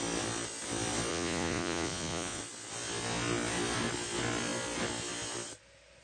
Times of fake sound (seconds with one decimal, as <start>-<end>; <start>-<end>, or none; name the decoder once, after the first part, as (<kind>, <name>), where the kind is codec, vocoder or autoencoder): 1.1-2.4 (vocoder, Vocos)